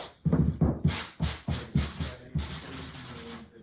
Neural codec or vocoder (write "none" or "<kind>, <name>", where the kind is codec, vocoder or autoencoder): none